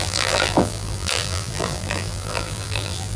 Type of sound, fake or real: fake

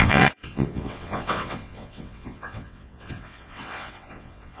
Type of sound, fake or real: fake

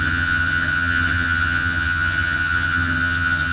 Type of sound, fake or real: fake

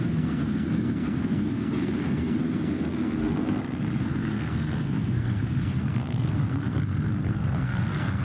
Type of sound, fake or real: fake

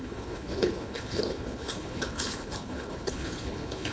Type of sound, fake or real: fake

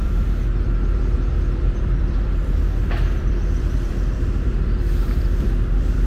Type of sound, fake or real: fake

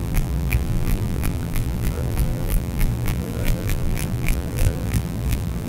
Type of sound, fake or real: fake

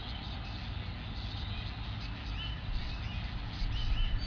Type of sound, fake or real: real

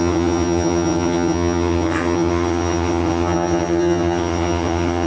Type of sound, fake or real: fake